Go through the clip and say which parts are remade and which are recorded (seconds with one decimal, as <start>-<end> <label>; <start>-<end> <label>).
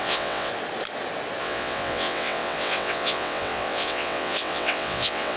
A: 0.0-0.5 remade; 0.5-1.4 recorded; 1.4-5.4 remade